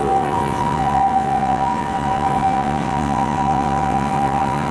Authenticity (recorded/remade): remade